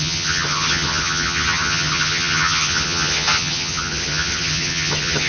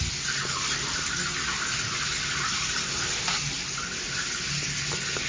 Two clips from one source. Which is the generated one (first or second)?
first